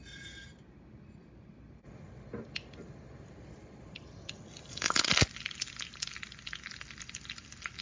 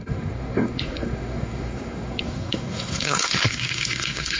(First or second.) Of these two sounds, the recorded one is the first